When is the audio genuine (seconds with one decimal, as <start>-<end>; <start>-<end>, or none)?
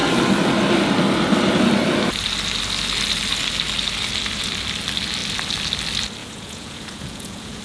0.0-6.2